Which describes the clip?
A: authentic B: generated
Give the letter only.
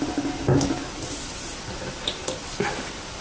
A